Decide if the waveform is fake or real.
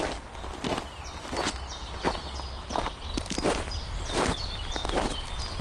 real